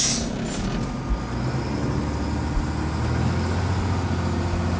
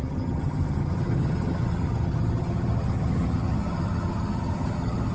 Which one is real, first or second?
first